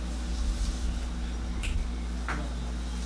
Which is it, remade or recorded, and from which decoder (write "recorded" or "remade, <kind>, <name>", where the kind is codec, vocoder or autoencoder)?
recorded